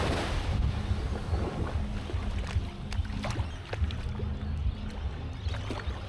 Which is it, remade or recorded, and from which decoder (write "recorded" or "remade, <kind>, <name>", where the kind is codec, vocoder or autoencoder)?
recorded